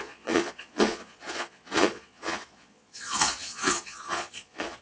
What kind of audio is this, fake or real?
fake